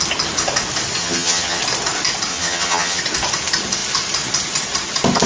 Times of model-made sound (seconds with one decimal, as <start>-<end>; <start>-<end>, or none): 1.0-1.6; 2.3-3.0

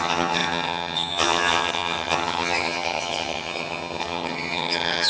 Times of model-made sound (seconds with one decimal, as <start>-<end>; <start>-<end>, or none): 0.0-5.1

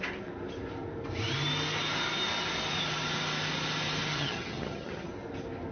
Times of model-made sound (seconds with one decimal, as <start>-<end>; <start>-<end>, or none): 4.1-5.1